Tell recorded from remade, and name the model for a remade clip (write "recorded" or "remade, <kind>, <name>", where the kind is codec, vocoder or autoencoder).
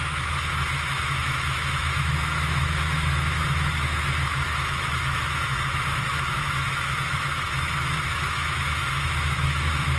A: remade, autoencoder, DAC-VAE